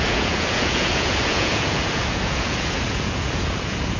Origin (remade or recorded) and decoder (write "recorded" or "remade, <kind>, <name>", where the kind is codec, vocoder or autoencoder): remade, vocoder, Vocos